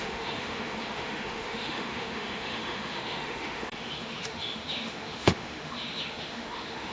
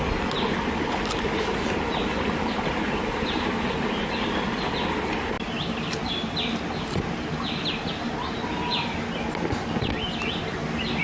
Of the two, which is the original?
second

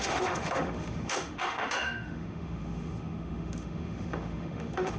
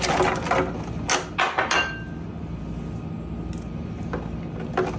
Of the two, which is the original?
second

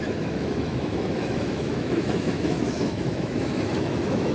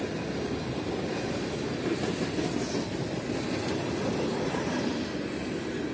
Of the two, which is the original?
second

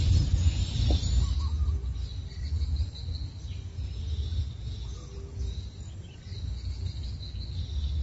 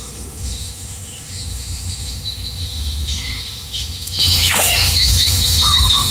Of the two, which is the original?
first